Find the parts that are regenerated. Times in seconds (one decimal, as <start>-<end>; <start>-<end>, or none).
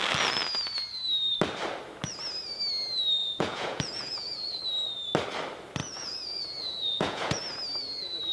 3.2-4.6; 5.8-7.4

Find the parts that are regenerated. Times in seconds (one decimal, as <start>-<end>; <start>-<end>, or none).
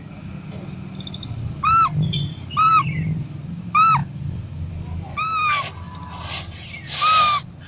none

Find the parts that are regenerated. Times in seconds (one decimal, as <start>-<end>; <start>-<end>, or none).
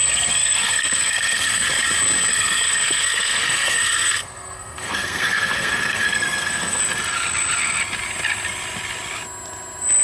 0.0-1.7; 2.3-6.8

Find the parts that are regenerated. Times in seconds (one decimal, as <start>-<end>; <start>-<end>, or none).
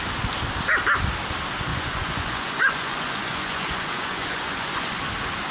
1.7-5.0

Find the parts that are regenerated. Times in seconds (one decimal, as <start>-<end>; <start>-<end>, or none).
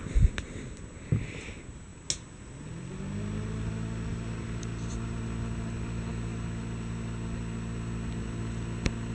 none